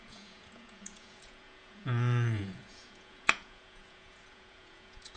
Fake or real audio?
fake